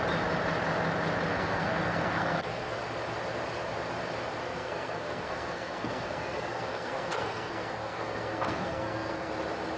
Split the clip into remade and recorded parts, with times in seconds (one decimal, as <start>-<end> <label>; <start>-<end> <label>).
0.0-1.3 recorded; 1.3-2.8 remade; 2.8-4.4 recorded; 4.4-9.3 remade; 9.3-9.8 recorded